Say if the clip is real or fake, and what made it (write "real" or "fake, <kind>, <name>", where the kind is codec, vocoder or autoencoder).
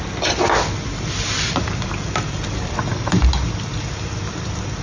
real